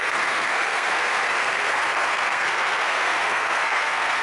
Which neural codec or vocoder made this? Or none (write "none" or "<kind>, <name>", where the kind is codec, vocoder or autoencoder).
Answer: codec, SNAC